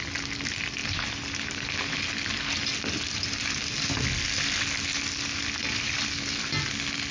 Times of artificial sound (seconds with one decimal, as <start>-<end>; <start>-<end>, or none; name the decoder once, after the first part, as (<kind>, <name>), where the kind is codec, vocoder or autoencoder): none